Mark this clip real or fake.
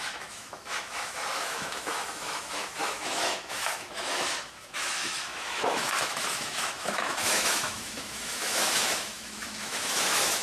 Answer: fake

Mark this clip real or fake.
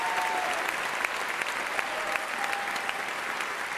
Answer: real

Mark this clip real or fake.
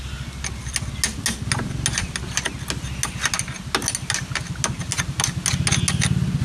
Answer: real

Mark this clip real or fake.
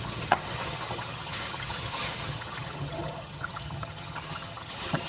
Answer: fake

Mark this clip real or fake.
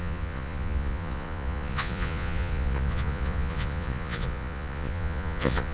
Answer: fake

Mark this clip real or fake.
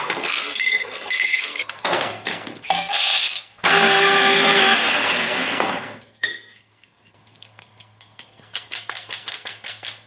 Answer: fake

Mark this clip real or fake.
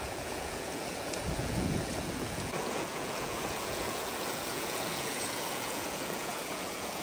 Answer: fake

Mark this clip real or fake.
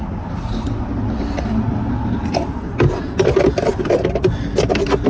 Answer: real